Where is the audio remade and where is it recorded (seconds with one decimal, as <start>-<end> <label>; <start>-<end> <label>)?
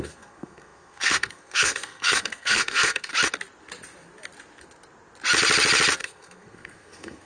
0.0-3.1 remade; 3.1-6.0 recorded; 6.0-7.3 remade